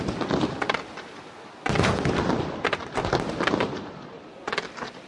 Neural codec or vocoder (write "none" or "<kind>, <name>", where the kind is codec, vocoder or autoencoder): none